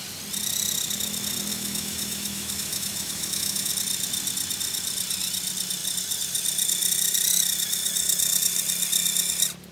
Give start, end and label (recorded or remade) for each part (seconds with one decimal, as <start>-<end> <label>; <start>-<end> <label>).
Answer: 0.0-1.5 recorded; 1.5-3.7 remade; 3.7-9.7 recorded